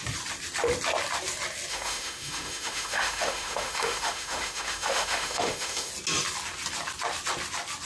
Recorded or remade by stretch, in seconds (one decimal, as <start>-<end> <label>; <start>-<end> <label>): 0.0-1.7 recorded; 1.7-5.9 remade; 5.9-7.9 recorded

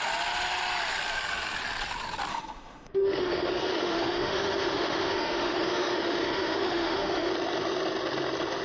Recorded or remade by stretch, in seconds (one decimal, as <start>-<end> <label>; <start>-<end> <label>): 0.0-2.3 recorded; 2.3-7.3 remade; 7.3-8.6 recorded

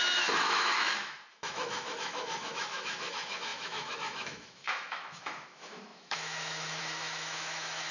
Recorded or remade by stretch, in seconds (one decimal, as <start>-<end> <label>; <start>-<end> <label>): 0.0-7.9 remade

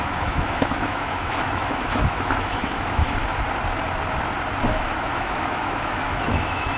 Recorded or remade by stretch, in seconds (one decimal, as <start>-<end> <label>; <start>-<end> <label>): 0.0-3.2 remade; 3.2-4.7 recorded; 4.7-6.8 remade

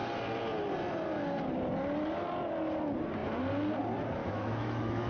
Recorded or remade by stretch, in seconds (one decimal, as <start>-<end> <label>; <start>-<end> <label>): 0.0-4.2 recorded; 4.2-5.1 remade